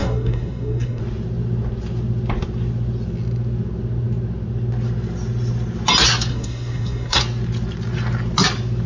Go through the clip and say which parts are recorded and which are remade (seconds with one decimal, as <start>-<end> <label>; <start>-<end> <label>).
0.0-1.0 remade; 1.0-6.3 recorded; 6.3-7.2 remade; 7.2-8.9 recorded